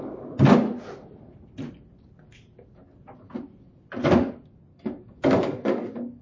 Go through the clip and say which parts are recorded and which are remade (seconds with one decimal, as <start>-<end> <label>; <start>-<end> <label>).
0.0-4.7 recorded; 4.7-6.2 remade